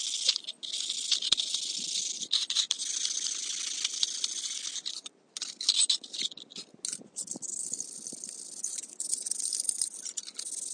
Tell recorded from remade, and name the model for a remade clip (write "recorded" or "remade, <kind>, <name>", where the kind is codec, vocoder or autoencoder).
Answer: recorded